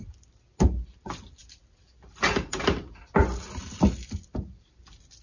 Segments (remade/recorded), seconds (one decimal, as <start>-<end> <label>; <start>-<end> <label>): 0.0-5.2 recorded